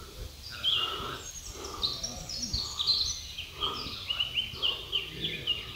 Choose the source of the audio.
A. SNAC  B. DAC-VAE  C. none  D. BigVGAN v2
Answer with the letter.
C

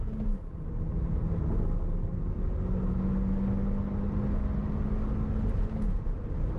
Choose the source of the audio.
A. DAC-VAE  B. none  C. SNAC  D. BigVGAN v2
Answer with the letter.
B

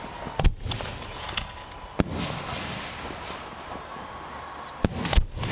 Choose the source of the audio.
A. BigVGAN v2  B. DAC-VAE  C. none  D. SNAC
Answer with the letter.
C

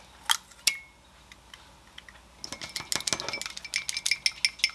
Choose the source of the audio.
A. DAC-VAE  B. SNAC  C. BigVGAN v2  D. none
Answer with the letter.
D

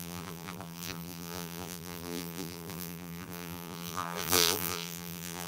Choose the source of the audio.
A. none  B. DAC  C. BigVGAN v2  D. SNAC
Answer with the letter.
C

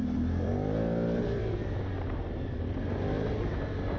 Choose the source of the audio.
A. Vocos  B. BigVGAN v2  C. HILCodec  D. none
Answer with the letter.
B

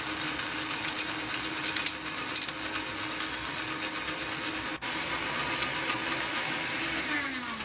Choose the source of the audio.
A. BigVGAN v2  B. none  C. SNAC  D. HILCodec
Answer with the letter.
B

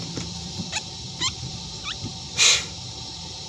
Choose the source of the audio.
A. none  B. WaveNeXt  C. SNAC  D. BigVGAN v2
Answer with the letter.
D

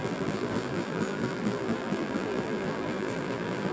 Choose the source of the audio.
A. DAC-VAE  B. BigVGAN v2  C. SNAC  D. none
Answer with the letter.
B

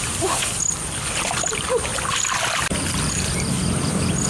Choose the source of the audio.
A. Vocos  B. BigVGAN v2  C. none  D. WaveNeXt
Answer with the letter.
B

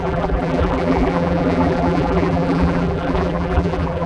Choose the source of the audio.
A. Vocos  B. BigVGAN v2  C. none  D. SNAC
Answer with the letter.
B